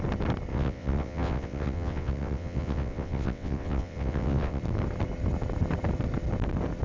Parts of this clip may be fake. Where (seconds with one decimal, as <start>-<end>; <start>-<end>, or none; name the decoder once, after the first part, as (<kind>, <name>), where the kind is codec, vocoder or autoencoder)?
0.5-4.6 (vocoder, WaveNeXt)